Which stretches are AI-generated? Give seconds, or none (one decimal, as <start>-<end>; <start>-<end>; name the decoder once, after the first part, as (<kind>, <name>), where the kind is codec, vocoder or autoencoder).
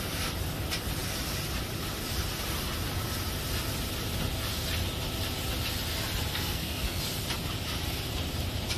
6.3-7.0 (codec, SNAC)